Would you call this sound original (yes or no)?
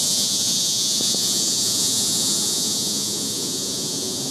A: no